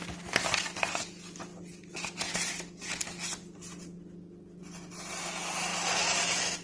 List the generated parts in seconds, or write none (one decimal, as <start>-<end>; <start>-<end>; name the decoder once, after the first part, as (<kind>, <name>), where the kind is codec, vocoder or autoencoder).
none